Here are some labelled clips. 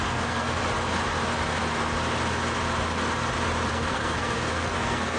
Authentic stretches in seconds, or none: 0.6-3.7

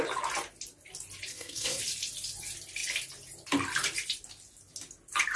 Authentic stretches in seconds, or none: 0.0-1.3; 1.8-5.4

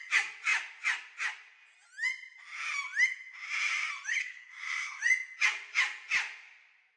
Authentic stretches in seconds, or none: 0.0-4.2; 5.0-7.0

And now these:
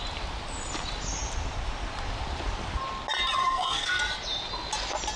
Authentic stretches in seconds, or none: 0.0-3.4; 4.0-5.2